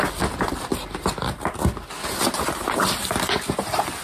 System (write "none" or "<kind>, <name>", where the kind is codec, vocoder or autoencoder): none